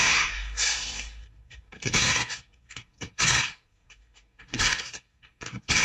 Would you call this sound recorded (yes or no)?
no